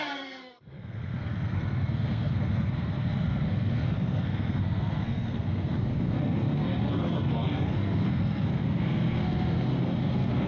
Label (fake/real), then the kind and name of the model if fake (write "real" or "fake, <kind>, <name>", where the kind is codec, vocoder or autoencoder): fake, codec, SNAC